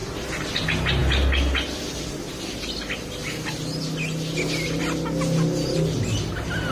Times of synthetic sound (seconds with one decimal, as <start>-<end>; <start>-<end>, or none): none